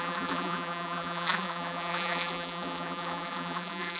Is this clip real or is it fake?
fake